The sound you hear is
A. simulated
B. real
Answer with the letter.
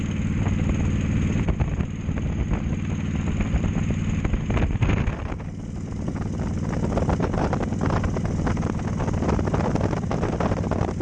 B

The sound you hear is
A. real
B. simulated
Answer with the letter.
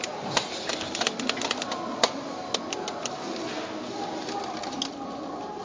A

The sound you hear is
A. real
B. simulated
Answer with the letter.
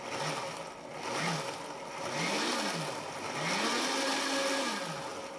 A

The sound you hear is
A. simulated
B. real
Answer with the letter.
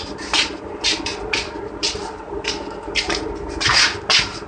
B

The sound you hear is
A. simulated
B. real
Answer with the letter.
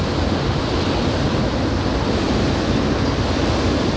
B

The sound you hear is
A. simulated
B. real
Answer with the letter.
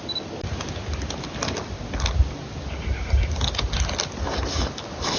B